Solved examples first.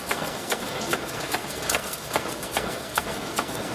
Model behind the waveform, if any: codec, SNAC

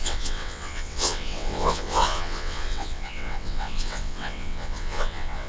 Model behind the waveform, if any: vocoder, WaveNeXt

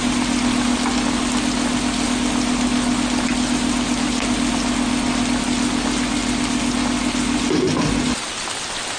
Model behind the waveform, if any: none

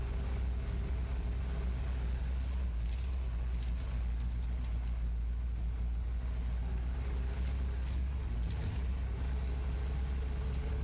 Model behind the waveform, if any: none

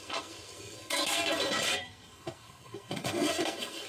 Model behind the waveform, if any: codec, SNAC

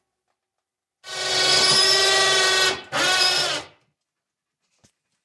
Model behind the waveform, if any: none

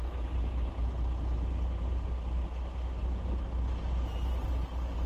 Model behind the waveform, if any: none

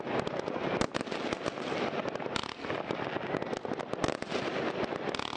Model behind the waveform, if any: none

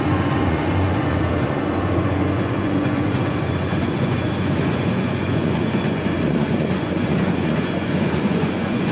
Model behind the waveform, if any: vocoder, Vocos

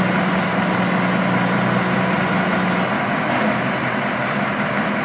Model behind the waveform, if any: none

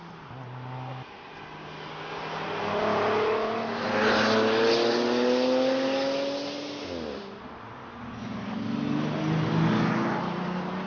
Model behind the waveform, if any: none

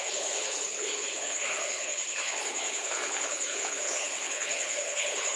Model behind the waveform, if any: codec, HILCodec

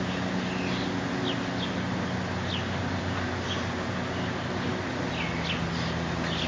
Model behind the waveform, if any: none